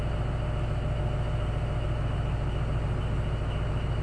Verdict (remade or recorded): recorded